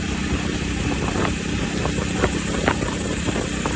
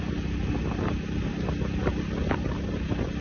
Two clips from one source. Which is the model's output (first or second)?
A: first